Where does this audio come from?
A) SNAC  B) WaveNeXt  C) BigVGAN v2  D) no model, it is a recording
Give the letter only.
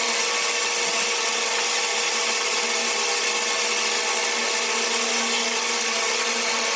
D